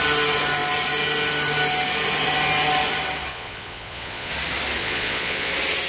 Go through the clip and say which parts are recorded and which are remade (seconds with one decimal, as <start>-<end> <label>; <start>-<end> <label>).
0.0-3.3 recorded; 3.3-4.3 remade; 4.3-4.8 recorded; 4.8-5.5 remade; 5.5-5.9 recorded